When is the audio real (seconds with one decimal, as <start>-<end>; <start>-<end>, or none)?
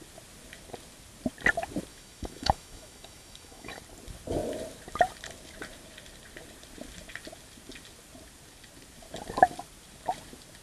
0.0-1.9; 3.8-10.6